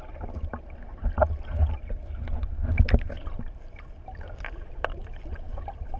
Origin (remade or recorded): recorded